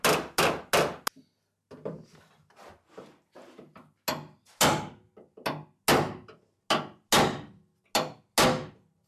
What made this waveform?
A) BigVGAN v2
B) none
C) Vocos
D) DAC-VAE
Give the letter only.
B